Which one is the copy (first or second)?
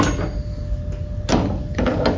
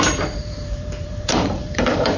second